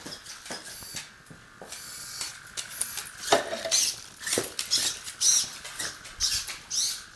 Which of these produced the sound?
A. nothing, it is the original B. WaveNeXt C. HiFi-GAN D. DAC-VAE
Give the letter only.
A